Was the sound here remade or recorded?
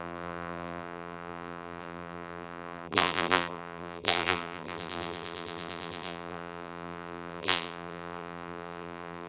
remade